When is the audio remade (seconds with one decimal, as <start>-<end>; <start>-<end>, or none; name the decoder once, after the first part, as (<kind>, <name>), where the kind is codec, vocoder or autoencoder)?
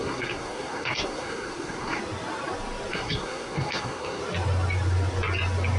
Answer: 0.0-2.0 (codec, SNAC); 2.9-4.2